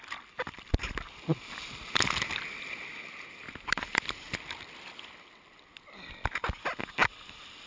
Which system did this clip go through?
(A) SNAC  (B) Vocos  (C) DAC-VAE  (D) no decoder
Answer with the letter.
D